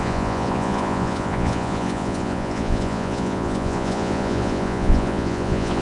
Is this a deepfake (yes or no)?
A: yes